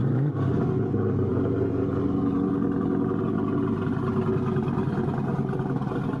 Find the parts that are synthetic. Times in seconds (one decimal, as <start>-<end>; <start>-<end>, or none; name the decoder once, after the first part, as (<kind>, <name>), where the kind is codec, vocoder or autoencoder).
none